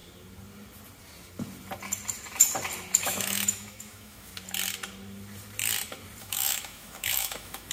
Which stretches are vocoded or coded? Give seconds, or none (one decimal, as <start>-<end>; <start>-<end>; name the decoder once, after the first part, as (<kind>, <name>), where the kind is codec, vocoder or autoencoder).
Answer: 3.0-4.3 (autoencoder, DAC-VAE); 6.2-7.7